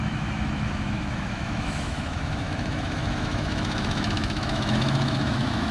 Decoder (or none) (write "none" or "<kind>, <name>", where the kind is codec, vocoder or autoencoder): autoencoder, DAC-VAE